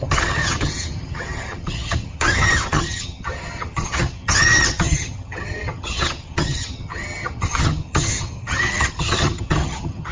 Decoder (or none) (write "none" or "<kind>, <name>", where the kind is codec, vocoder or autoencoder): vocoder, HiFi-GAN